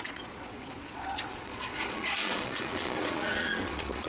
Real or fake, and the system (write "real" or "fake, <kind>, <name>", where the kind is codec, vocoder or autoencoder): fake, vocoder, Vocos